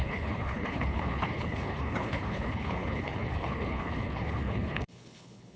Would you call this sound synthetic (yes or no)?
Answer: yes